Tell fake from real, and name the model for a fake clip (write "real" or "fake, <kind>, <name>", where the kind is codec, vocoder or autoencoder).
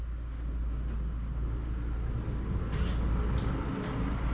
real